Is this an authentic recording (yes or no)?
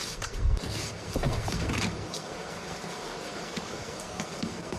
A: no